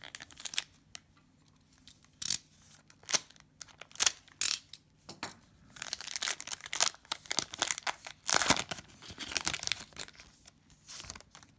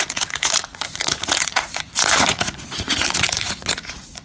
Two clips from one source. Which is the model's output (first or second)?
second